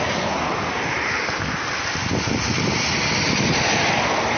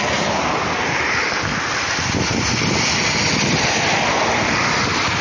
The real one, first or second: first